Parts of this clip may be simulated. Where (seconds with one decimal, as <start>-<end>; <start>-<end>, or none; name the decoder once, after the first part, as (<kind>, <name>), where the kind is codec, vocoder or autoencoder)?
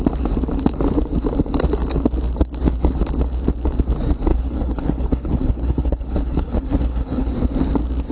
4.3-7.3 (codec, HILCodec)